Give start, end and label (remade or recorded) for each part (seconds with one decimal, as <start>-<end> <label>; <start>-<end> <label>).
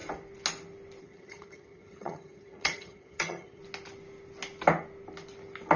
0.0-1.0 recorded; 1.0-3.6 remade; 3.6-5.8 recorded